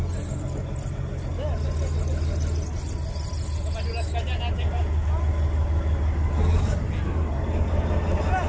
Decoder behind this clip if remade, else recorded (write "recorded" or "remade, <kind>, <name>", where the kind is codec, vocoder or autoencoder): recorded